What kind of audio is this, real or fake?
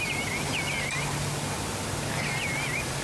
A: real